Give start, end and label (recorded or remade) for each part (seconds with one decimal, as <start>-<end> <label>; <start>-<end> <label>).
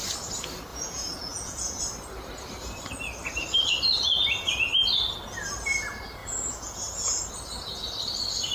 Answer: 0.0-0.7 recorded; 0.7-1.8 remade; 1.8-6.2 recorded; 6.2-7.3 remade; 7.3-8.5 recorded